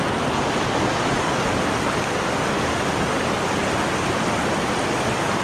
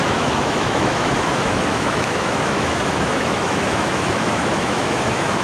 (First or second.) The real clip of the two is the first